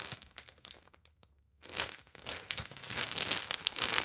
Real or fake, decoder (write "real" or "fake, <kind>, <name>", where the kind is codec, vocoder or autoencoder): fake, codec, SNAC